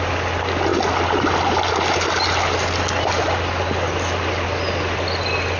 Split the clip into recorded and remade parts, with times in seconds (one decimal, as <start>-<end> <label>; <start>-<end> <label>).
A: 0.0-5.6 recorded